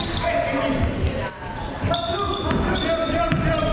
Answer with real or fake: real